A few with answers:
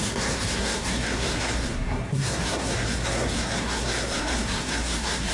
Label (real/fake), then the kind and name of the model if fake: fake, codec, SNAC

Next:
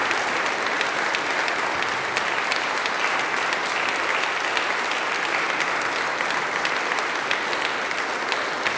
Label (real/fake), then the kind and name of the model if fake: real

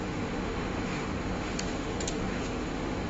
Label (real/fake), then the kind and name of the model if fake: fake, autoencoder, DAC-VAE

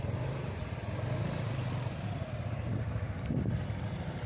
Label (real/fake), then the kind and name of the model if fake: fake, vocoder, BigVGAN v2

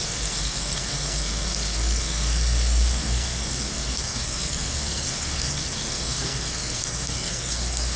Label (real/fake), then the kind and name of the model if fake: fake, codec, SNAC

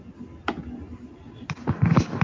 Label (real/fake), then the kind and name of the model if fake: real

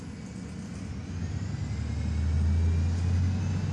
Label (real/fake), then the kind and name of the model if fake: real